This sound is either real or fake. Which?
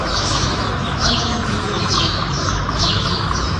fake